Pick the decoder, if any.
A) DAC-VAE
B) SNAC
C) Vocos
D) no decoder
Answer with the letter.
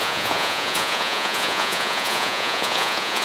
C